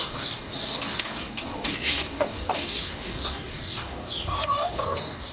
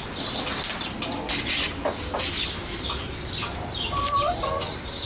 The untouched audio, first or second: second